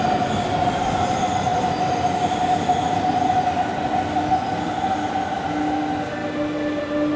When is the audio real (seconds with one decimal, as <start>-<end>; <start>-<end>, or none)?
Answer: 0.0-7.2